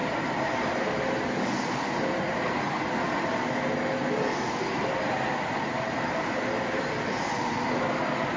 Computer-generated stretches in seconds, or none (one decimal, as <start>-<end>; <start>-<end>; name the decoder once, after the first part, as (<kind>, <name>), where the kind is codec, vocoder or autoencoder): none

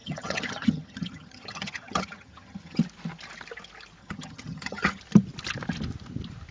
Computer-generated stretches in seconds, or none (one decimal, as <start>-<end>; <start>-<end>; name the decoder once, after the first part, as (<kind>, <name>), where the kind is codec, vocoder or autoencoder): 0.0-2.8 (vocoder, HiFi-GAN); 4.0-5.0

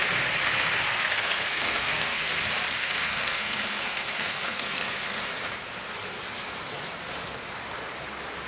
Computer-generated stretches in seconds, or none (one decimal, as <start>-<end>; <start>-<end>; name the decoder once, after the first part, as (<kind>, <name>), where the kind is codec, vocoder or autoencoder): 0.9-2.4 (codec, SNAC); 2.8-5.2

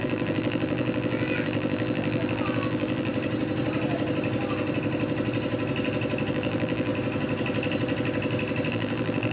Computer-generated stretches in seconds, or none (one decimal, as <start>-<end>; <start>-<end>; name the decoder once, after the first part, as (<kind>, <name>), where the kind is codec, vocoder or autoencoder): 0.0-3.1 (vocoder, BigVGAN v2); 6.3-6.9; 8.7-9.3

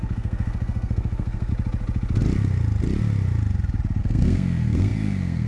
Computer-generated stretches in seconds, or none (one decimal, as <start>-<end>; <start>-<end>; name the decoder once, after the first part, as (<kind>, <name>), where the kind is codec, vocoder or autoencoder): 0.0-1.5 (codec, SNAC); 4.0-5.5

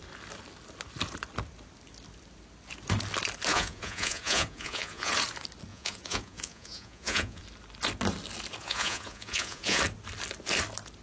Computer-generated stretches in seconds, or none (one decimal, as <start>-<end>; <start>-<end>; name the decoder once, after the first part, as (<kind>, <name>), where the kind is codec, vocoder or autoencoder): 3.5-5.1 (vocoder, Vocos); 5.7-7.4; 8.6-9.8